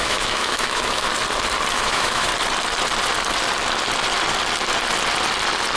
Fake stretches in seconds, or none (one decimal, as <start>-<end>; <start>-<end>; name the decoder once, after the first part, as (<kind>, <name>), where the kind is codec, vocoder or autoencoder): 0.0-1.1 (autoencoder, DAC-VAE); 1.7-2.3